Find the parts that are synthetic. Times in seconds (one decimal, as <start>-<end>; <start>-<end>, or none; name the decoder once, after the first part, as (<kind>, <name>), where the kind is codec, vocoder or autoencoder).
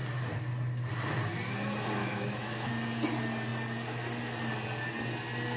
2.0-2.7 (autoencoder, DAC-VAE)